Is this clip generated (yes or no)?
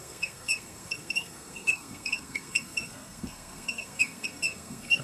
yes